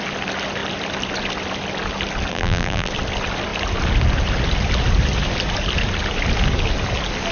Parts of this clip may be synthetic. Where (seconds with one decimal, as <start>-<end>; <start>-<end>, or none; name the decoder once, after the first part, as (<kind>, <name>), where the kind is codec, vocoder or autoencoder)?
2.3-2.9 (vocoder, BigVGAN v2)